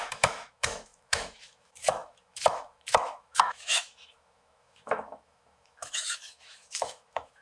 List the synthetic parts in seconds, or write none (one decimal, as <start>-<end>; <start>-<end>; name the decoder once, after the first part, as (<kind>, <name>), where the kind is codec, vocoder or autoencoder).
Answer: 0.0-7.4 (autoencoder, DAC-VAE)